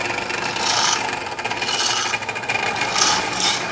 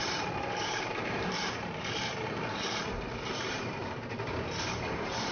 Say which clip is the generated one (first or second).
second